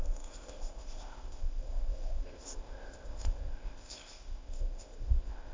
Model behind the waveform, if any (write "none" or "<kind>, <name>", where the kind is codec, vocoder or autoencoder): codec, ZipCodec